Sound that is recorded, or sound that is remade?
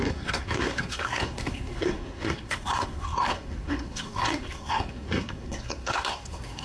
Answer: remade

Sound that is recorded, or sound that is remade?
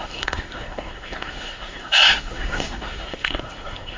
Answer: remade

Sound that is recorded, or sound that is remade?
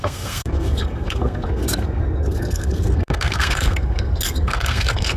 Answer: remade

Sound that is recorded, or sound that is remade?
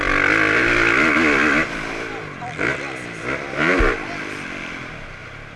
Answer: recorded